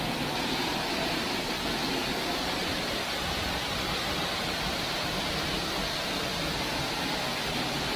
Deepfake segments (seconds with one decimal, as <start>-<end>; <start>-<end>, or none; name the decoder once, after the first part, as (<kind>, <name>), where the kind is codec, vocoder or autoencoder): 6.3-7.1 (vocoder, BigVGAN v2)